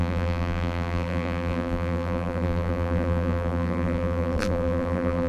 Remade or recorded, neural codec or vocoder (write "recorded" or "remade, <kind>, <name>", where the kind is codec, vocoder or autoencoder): remade, vocoder, BigVGAN v2